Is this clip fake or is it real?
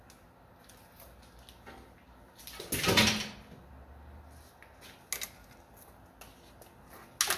real